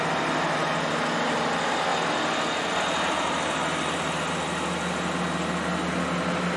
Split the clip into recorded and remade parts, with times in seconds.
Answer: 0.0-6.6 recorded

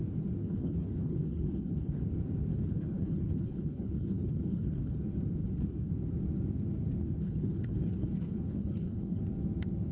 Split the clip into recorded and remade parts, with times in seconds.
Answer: 0.0-0.4 recorded; 0.4-2.0 remade; 2.0-2.5 recorded; 2.5-5.0 remade; 5.0-5.4 recorded; 5.4-5.9 remade; 5.9-7.2 recorded; 7.2-9.2 remade; 9.2-9.9 recorded

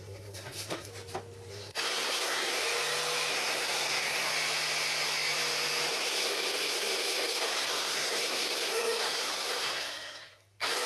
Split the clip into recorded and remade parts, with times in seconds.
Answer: 0.0-0.9 remade; 0.9-1.5 recorded; 1.5-2.6 remade; 2.6-3.3 recorded; 3.3-4.3 remade; 4.3-5.9 recorded; 5.9-10.9 remade